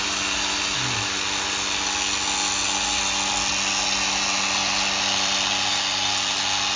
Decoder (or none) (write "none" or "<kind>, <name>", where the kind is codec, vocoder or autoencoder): none